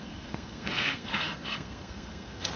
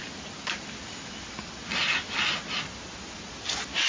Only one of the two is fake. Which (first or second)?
first